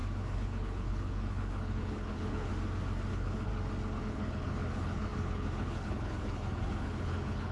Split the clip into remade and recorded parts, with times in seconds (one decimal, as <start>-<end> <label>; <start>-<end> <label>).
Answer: 0.0-2.5 remade; 2.5-3.1 recorded; 3.1-3.5 remade; 3.5-4.0 recorded; 4.0-7.5 remade